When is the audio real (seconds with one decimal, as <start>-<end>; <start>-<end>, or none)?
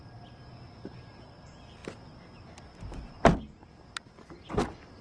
0.0-5.0